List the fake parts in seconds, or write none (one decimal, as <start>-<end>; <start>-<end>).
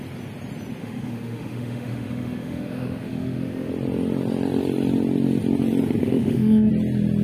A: 0.8-3.7; 6.0-6.7